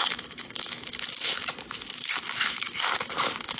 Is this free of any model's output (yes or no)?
no